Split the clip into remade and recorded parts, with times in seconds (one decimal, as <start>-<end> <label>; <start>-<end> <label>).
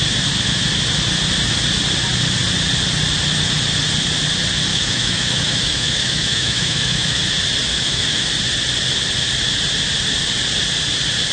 0.0-4.7 recorded; 4.7-7.2 remade; 7.2-7.7 recorded; 7.7-8.3 remade; 8.3-11.3 recorded